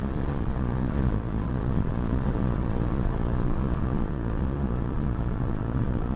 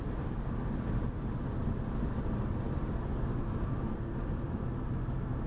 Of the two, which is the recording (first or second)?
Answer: second